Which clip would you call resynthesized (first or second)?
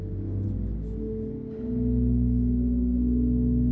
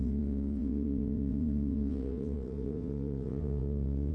second